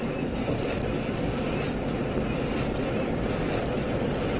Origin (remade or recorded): recorded